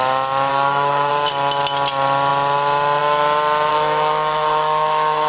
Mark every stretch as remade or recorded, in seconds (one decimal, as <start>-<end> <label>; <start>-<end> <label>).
0.0-0.5 recorded; 0.5-1.1 remade; 1.1-3.7 recorded; 3.7-5.3 remade